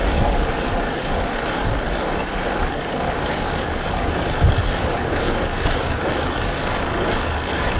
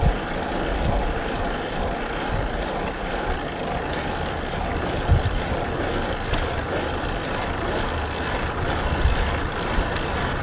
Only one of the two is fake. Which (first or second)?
first